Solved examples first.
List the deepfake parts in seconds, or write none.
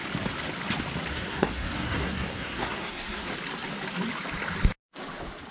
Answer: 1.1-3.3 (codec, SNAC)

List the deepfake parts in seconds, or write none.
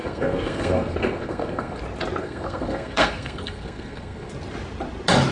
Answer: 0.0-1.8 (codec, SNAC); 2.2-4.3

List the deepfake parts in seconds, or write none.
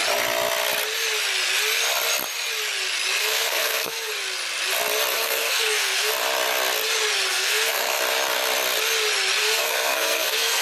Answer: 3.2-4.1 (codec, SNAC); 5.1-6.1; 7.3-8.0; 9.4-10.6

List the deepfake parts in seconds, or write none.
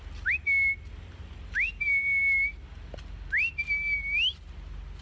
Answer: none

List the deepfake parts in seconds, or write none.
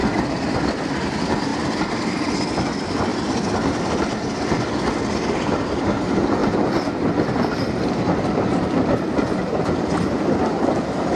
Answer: none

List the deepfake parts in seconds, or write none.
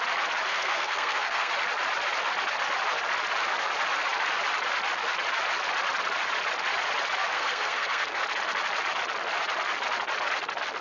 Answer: 0.5-1.5 (codec, SNAC); 7.3-8.2